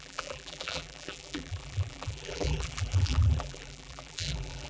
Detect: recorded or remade remade